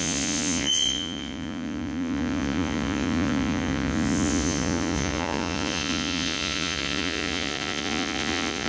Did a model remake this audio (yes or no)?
yes